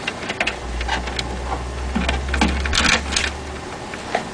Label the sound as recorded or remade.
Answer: recorded